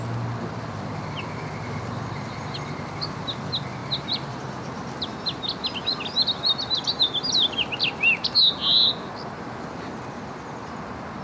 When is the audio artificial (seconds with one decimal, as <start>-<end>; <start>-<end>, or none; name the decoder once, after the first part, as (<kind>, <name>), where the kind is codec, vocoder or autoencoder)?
3.8-4.4 (vocoder, BigVGAN v2)